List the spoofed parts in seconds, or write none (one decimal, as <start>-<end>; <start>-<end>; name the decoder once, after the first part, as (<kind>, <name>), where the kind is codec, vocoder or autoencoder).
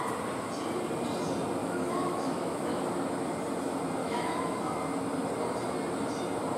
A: 1.6-2.8 (autoencoder, DAC-VAE); 4.0-4.6